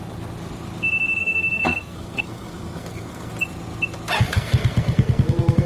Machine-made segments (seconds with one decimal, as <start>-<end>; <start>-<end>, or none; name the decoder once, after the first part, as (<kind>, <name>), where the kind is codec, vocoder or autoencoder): 1.2-3.3 (codec, SNAC); 4.3-5.7